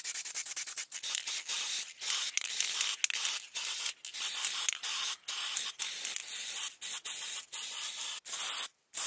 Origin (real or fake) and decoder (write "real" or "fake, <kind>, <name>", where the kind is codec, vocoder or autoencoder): real